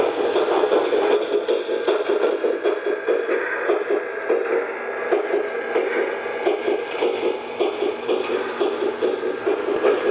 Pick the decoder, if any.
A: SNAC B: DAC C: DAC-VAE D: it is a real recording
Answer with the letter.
D